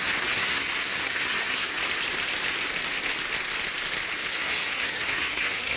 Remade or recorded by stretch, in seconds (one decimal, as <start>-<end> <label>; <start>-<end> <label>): 0.0-1.7 remade; 1.7-4.3 recorded; 4.3-5.8 remade